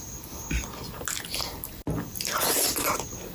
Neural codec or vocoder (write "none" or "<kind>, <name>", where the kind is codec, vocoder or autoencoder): none